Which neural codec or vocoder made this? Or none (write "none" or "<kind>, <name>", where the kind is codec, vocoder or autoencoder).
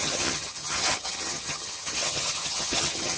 vocoder, HiFi-GAN